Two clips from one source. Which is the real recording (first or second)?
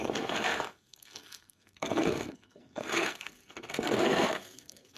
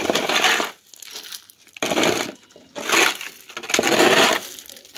second